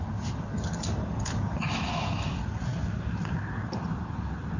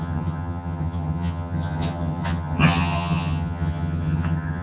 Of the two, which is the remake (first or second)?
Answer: second